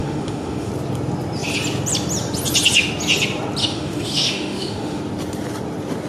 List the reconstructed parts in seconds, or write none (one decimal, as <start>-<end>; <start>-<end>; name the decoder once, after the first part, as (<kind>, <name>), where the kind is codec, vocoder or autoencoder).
0.0-0.7 (autoencoder, DAC-VAE); 3.6-5.0